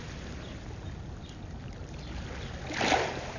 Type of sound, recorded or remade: recorded